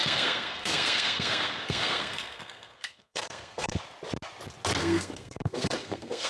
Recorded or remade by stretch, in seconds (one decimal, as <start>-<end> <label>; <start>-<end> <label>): 0.0-3.8 remade; 3.8-4.8 recorded; 4.8-6.3 remade